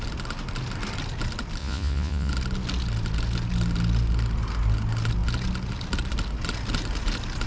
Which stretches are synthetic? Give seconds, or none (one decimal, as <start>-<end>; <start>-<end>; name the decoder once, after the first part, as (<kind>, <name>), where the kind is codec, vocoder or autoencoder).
1.6-2.3 (vocoder, Vocos)